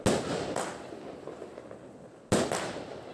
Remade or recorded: recorded